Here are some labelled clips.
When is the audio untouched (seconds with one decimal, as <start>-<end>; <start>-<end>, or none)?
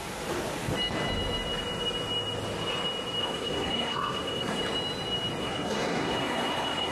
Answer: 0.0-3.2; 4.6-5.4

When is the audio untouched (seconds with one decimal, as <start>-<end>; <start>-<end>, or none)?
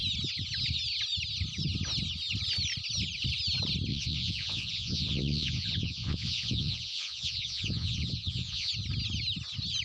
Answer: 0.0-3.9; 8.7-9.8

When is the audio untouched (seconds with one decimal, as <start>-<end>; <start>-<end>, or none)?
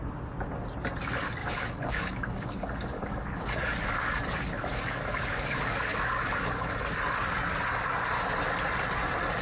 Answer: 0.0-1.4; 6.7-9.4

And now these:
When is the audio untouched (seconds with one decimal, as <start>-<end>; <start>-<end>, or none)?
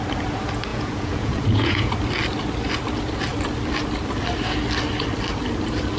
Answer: 0.0-0.7; 1.9-6.0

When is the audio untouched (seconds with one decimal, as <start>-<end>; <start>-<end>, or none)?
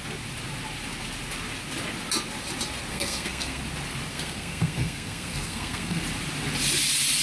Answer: 0.0-2.9; 3.6-4.1; 6.0-7.2